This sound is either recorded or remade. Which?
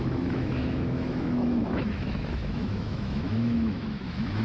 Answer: remade